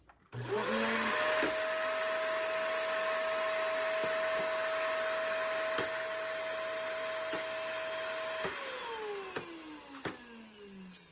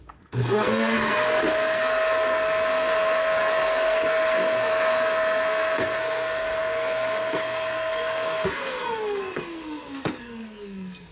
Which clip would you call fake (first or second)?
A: second